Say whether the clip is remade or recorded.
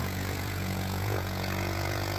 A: remade